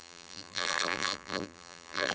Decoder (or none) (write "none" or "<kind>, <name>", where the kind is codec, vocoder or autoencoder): vocoder, BigVGAN v2